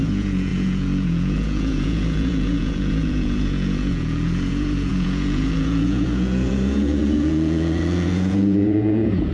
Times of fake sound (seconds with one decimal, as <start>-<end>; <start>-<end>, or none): 0.0-9.3